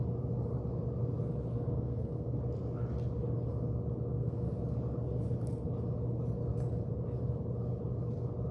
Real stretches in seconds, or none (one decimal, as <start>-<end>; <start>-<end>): 0.0-1.5; 2.3-4.1; 4.6-8.5